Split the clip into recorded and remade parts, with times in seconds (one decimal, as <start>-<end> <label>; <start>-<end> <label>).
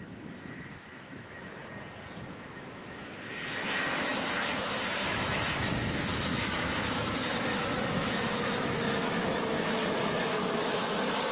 0.0-1.6 remade; 1.6-2.3 recorded; 2.3-11.3 remade